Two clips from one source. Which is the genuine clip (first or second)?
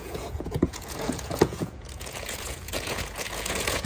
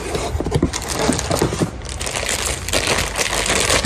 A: second